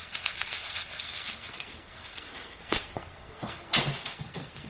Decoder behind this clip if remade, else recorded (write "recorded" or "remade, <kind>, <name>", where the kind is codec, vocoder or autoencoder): remade, codec, SNAC